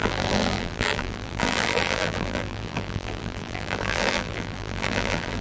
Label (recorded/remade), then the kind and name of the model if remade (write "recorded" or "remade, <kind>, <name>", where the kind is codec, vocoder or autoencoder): remade, vocoder, BigVGAN v2